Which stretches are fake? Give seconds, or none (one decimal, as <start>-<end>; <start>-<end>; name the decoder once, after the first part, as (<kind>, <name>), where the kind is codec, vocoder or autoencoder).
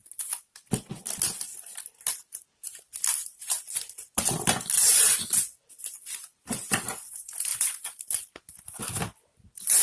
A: none